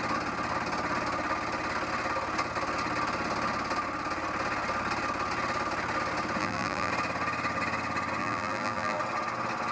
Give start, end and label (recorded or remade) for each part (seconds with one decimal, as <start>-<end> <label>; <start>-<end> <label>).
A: 0.0-6.4 recorded; 6.4-6.9 remade; 6.9-8.2 recorded; 8.2-9.0 remade; 9.0-9.7 recorded